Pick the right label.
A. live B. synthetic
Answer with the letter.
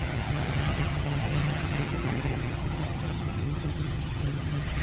B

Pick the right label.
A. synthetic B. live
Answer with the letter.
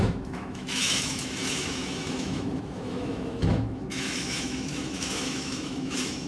A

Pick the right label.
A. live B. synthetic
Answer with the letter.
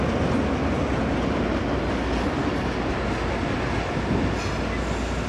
A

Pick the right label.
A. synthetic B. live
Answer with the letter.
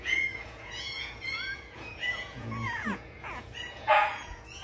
A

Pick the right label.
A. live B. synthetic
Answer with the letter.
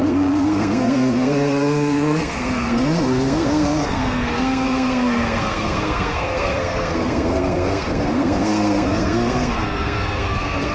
B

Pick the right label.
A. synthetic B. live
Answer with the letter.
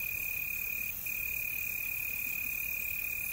B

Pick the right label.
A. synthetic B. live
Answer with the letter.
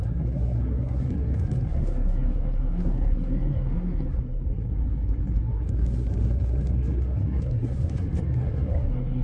A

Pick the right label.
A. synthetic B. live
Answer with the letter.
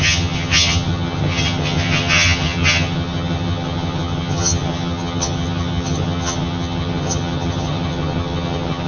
A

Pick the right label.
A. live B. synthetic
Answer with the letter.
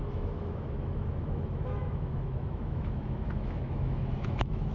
B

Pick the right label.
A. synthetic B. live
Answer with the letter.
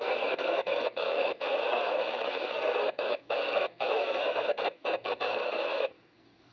A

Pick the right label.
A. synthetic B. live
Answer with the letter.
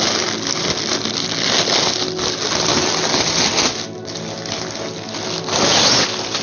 B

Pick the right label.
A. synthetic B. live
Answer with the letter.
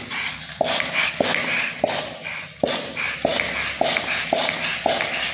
B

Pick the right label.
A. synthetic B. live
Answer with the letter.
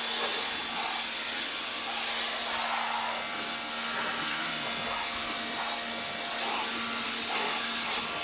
B